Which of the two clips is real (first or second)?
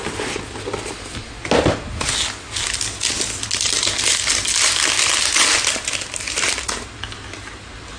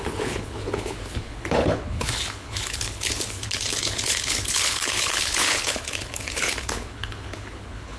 first